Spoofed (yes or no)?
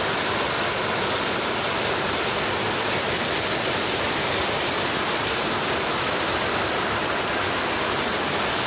no